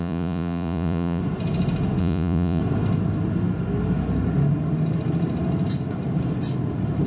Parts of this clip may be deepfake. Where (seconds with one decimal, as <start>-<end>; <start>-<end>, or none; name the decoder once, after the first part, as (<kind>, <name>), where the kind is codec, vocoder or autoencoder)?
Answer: 0.0-1.2 (vocoder, Vocos); 2.0-2.6